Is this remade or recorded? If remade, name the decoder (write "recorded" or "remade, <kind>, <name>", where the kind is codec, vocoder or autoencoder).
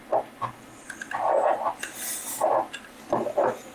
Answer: recorded